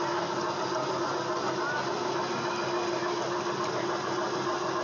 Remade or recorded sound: recorded